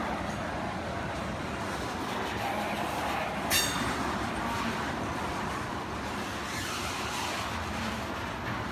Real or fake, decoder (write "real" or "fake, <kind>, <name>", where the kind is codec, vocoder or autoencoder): real